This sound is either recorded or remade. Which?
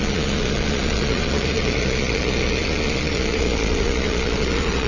remade